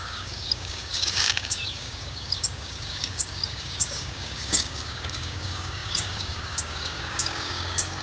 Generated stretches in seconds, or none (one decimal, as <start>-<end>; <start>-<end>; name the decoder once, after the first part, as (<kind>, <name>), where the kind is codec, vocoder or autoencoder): 0.0-8.0 (codec, DAC)